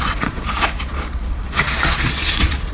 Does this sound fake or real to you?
fake